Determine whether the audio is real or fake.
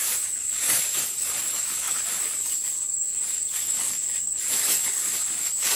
fake